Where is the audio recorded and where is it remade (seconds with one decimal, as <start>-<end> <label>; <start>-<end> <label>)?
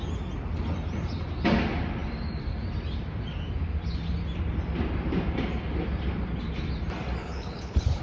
0.0-7.2 recorded; 7.2-8.0 remade